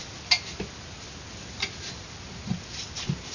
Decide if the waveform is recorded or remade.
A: recorded